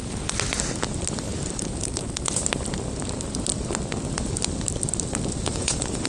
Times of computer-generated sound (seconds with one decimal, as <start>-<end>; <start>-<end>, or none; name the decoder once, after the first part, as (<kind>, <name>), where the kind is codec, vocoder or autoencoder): 5.5-6.1 (vocoder, Vocos)